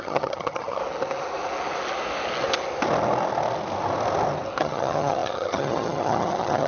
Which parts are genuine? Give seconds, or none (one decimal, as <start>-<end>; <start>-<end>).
0.8-4.6